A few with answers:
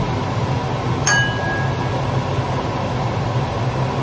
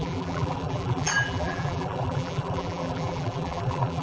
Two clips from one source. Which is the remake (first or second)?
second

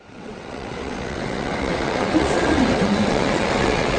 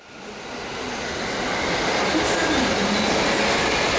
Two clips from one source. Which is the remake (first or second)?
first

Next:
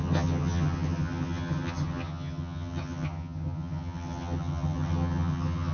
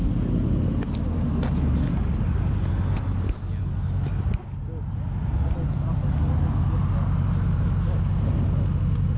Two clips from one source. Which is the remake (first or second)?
first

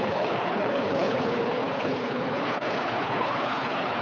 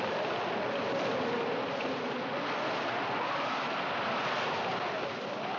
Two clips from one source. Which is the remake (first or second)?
first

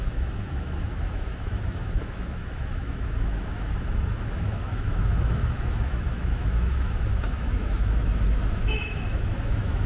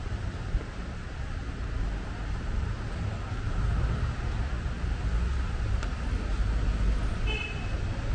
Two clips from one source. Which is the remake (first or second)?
first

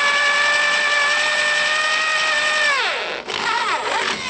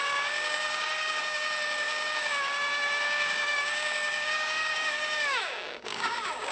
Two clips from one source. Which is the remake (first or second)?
second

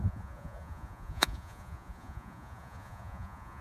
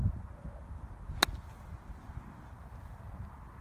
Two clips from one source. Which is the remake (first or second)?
first